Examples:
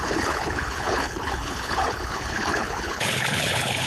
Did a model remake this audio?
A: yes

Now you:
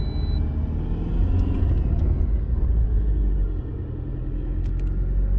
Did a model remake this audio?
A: no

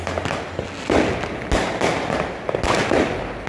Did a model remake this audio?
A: no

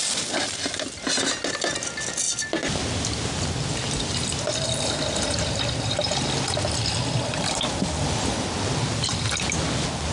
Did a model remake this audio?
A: no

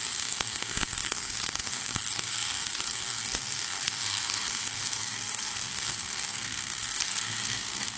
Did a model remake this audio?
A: yes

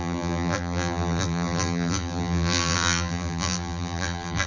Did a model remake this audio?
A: yes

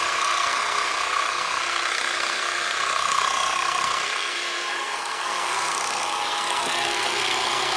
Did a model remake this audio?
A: yes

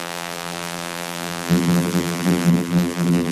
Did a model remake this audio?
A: yes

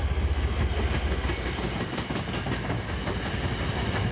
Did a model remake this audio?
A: no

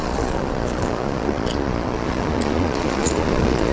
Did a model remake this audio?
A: yes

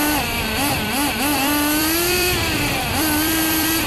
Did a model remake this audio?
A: yes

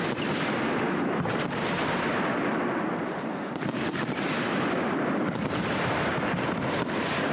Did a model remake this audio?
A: yes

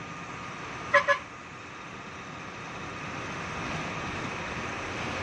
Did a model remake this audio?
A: no